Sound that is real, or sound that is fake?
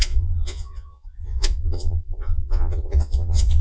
fake